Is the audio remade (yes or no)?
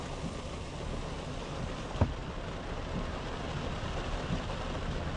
no